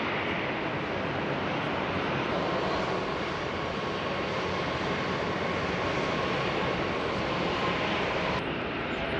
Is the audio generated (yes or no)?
yes